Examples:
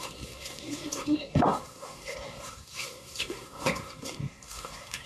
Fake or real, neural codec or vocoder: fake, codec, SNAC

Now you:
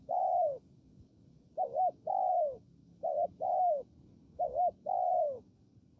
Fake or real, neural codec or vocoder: fake, codec, DAC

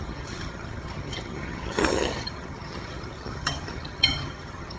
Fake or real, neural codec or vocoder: fake, vocoder, HiFi-GAN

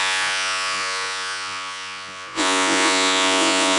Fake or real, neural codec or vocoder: fake, vocoder, Vocos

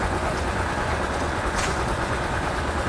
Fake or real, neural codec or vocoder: fake, vocoder, Vocos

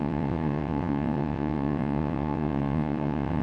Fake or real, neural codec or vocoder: fake, vocoder, WaveNeXt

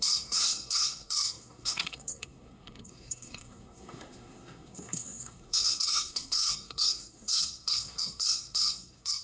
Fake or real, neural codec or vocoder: fake, codec, SNAC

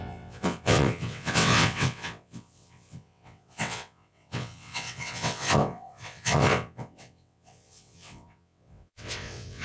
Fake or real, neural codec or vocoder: fake, vocoder, WaveNeXt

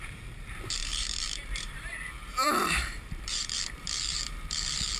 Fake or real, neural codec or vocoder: fake, vocoder, BigVGAN v2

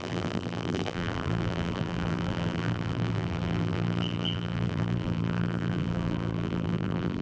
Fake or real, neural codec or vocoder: fake, vocoder, BigVGAN v2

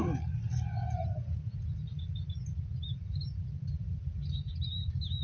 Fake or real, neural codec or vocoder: real